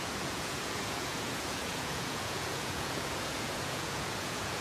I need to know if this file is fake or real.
fake